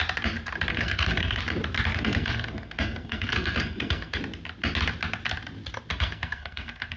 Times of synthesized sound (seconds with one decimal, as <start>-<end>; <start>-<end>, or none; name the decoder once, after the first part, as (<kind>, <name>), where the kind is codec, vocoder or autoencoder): 0.7-1.4 (codec, SNAC); 1.9-4.2; 5.9-7.0